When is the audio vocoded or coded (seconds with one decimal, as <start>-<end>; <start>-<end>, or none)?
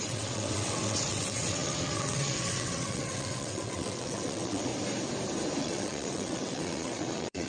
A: 0.0-4.7; 5.6-7.5